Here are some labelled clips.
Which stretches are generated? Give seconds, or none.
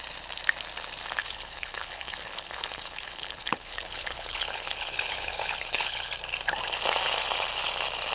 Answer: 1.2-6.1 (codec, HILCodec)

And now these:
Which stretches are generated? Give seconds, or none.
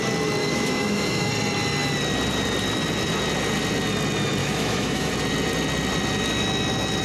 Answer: 0.4-1.3 (autoencoder, DAC-VAE); 4.4-5.1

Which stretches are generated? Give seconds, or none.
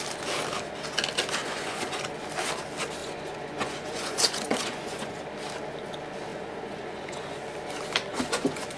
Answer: 1.4-2.0 (vocoder, Vocos); 3.0-5.2; 6.3-7.4; 8.1-8.8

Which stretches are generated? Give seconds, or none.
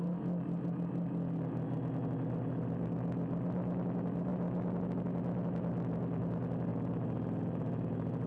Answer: none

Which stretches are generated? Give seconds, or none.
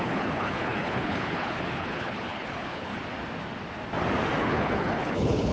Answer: 0.0-2.9 (codec, HILCodec); 4.4-5.5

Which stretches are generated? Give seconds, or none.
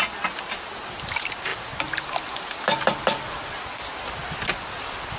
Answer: none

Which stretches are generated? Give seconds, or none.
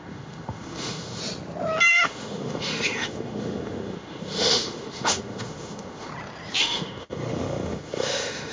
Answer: 0.0-1.2 (autoencoder, DAC-VAE); 1.9-6.1; 6.6-8.5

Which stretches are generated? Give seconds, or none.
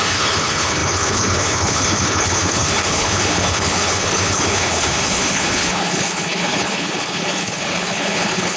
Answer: 0.0-8.6 (codec, HILCodec)